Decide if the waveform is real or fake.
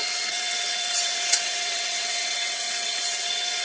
fake